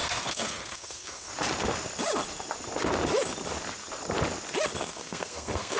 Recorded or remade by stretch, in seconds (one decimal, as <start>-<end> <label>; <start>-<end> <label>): 0.0-1.3 remade; 1.3-4.8 recorded; 4.8-5.8 remade

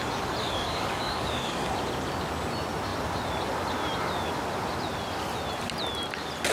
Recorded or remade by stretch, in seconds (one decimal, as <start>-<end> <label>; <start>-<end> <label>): 0.0-0.4 recorded; 0.4-1.7 remade; 1.7-6.5 recorded

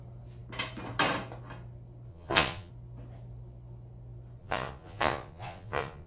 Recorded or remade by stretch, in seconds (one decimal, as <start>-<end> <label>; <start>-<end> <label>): 0.0-2.1 recorded; 2.1-2.7 remade; 2.7-4.4 recorded; 4.4-6.1 remade

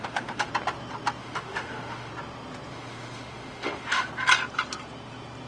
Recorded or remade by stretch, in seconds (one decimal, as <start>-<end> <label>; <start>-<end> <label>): 0.0-0.5 remade; 0.5-1.2 recorded; 1.2-2.1 remade; 2.1-2.7 recorded; 2.7-4.1 remade; 4.1-5.5 recorded

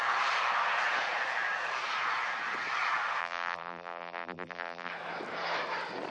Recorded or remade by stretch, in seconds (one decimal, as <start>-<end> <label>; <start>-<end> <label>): 0.0-3.2 recorded; 3.2-4.9 remade; 4.9-6.1 recorded

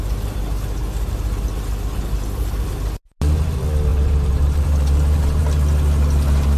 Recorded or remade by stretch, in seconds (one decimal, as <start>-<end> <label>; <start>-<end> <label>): 0.0-3.9 recorded; 3.9-5.4 remade; 5.4-6.6 recorded